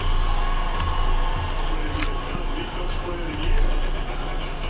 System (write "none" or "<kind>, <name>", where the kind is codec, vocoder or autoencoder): none